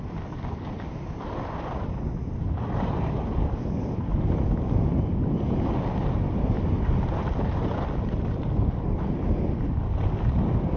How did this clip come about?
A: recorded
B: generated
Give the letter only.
A